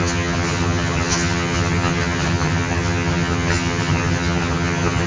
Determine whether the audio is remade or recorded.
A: remade